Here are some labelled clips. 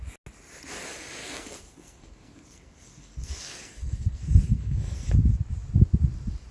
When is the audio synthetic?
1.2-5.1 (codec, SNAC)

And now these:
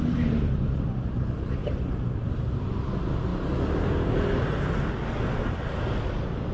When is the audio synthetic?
1.6-2.6 (vocoder, BigVGAN v2)